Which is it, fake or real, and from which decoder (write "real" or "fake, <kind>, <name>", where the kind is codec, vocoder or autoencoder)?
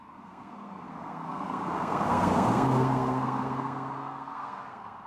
fake, codec, SNAC